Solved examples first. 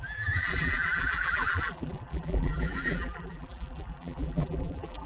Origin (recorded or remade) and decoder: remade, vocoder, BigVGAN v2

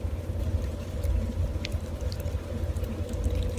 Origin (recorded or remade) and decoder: remade, vocoder, BigVGAN v2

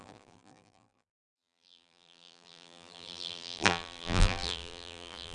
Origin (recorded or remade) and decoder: remade, vocoder, BigVGAN v2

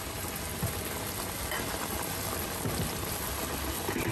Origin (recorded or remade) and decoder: recorded